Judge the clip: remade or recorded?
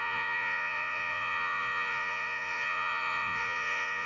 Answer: remade